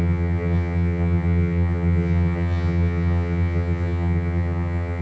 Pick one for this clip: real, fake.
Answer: fake